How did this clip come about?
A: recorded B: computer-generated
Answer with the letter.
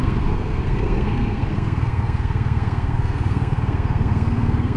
B